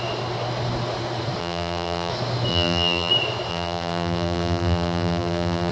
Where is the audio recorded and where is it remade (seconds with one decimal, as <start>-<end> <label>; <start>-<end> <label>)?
0.0-1.4 recorded; 1.4-2.1 remade; 2.1-2.5 recorded; 2.5-3.1 remade; 3.1-3.5 recorded; 3.5-5.7 remade